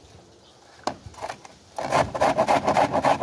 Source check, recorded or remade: recorded